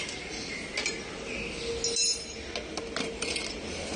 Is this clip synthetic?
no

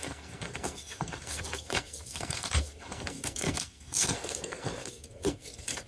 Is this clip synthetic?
yes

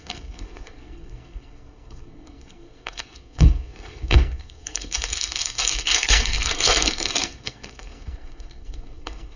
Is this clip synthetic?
yes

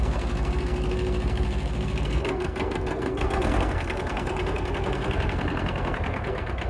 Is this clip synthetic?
yes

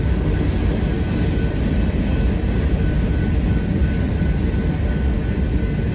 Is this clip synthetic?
no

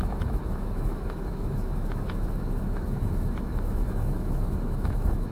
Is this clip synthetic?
yes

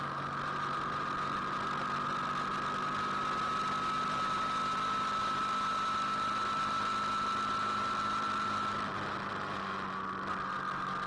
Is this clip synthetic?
no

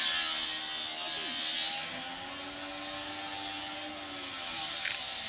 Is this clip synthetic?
no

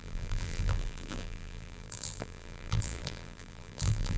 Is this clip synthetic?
yes